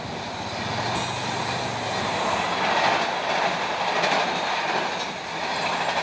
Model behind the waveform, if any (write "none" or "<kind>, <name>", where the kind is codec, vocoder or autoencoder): none